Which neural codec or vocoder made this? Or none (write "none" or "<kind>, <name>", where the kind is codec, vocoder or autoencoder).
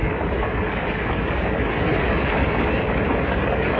codec, DAC